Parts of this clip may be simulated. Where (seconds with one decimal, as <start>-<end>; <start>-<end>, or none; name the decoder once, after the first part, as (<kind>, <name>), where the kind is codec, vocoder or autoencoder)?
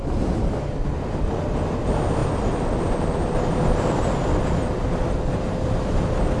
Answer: none